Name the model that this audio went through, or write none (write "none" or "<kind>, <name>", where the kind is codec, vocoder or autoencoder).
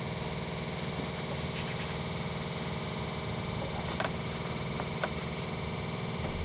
none